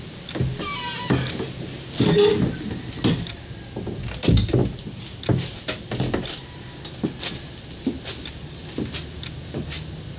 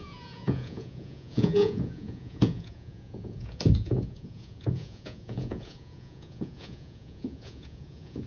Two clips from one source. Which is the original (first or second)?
first